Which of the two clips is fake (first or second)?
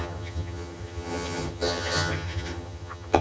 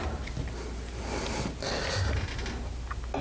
first